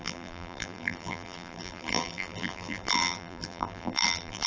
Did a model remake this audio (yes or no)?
yes